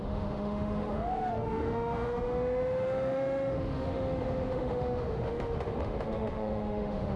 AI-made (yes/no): yes